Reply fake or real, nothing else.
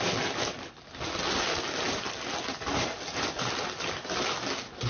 real